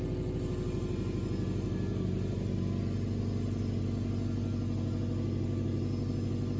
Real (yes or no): yes